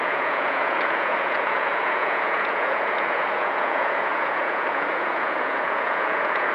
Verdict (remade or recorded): remade